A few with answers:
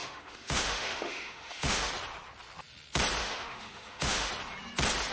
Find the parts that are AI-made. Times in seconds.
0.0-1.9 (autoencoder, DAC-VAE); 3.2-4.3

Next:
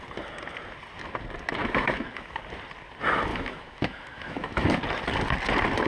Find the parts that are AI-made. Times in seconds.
1.6-2.4 (autoencoder, DAC-VAE); 3.3-4.8

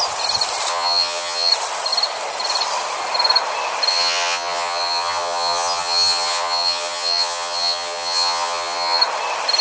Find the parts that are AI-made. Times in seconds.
0.7-1.5 (vocoder, HiFi-GAN); 3.9-9.0

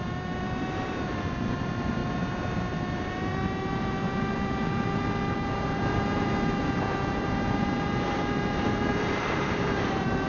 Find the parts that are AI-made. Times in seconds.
0.0-10.3 (vocoder, BigVGAN v2)

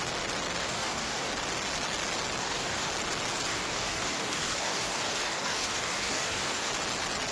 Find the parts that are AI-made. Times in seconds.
0.6-1.3 (codec, DAC); 2.4-2.9; 3.5-6.7

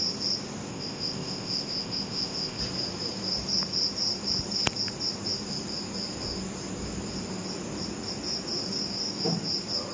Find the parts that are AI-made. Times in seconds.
0.7-2.6 (codec, ZipCodec)

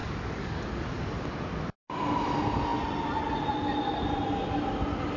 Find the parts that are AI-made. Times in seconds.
0.0-0.9 (codec, DAC)